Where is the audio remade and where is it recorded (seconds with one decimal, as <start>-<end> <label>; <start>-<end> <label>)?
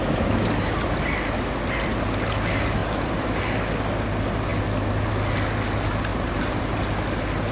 0.0-2.8 recorded; 2.8-3.4 remade; 3.4-6.1 recorded; 6.1-6.6 remade; 6.6-7.5 recorded